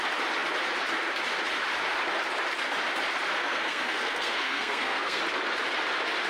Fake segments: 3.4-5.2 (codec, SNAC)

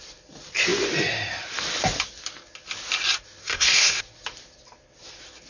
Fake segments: 3.4-4.0 (codec, SNAC)

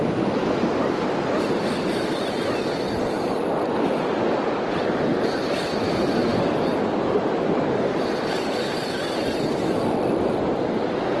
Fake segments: none

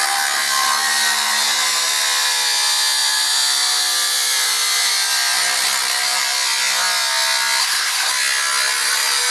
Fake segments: 7.6-8.1 (codec, SNAC)

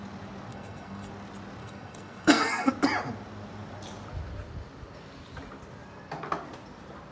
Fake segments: 0.5-1.1 (codec, SNAC); 1.6-2.7